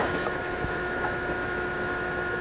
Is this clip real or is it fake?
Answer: fake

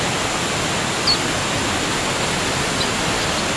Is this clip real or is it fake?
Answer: real